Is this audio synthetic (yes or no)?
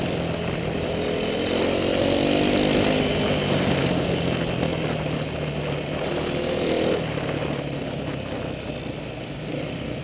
no